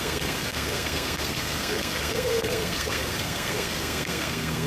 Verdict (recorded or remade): remade